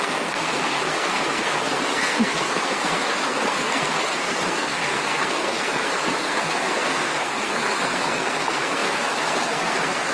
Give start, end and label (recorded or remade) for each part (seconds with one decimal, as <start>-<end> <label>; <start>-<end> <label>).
0.0-10.1 remade